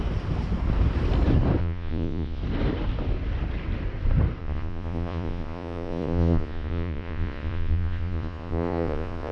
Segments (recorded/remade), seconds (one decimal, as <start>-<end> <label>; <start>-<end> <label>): 0.0-1.6 recorded; 1.6-2.4 remade; 2.4-4.4 recorded; 4.4-9.3 remade